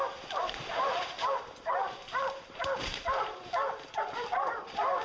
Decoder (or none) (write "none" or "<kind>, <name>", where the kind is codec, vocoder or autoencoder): vocoder, BigVGAN v2